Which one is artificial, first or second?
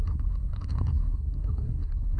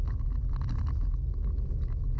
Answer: first